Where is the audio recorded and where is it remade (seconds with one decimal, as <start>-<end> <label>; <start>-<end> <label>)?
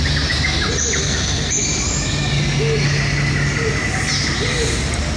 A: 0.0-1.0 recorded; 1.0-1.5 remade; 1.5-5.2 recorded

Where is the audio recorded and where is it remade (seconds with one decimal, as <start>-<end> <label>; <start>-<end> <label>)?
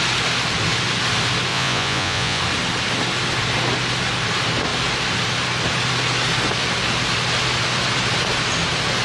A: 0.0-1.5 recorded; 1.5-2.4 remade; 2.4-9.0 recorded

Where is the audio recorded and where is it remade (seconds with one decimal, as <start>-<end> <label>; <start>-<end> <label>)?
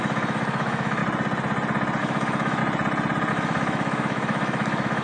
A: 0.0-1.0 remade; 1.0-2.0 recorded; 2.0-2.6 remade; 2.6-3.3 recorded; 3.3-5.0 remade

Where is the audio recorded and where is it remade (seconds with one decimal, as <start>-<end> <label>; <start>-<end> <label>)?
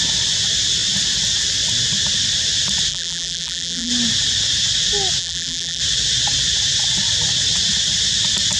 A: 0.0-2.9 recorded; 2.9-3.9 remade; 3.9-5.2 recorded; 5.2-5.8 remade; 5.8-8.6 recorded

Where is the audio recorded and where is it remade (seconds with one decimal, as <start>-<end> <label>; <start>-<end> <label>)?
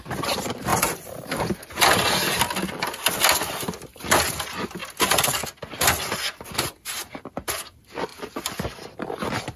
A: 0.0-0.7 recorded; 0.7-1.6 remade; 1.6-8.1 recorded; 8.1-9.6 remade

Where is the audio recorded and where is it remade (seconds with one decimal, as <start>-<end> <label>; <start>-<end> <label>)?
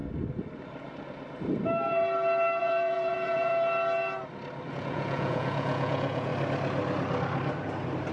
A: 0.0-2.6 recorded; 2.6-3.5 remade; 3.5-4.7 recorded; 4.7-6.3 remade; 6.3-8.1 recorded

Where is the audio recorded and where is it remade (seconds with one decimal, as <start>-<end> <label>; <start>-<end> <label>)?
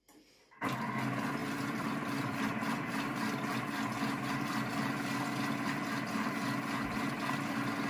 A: 0.0-1.4 recorded; 1.4-3.6 remade; 3.6-7.9 recorded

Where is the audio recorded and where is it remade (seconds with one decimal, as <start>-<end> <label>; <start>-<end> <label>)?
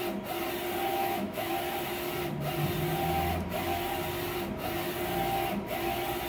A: 0.0-0.9 recorded; 0.9-1.5 remade; 1.5-6.3 recorded